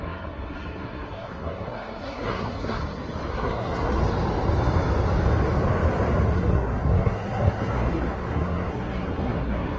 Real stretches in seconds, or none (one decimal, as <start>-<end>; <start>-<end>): 2.8-3.3; 4.0-6.3

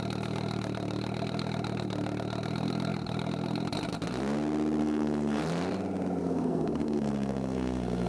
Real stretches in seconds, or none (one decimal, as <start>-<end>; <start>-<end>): 0.0-4.8; 5.4-6.2

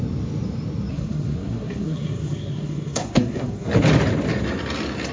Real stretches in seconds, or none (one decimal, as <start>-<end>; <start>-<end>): 0.0-0.9; 3.7-5.1

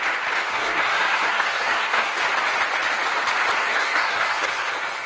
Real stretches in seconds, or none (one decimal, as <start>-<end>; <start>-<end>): 0.0-0.5; 2.2-3.6

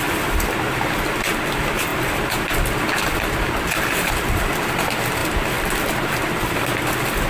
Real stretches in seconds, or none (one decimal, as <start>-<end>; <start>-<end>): 0.0-7.3